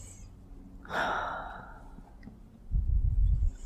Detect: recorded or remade recorded